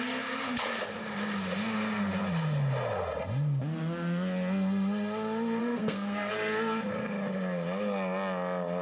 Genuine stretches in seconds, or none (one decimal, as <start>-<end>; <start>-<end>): 0.0-5.6; 6.3-8.8